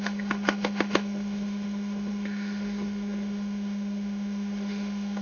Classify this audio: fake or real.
fake